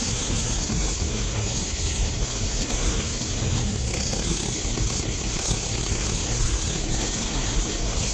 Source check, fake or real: fake